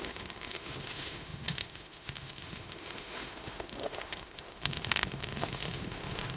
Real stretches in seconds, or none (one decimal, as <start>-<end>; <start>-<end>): none